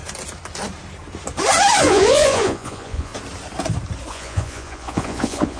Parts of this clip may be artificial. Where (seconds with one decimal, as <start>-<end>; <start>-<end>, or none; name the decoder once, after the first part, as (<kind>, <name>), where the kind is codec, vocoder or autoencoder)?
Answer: 1.8-3.1 (vocoder, Vocos); 4.1-5.6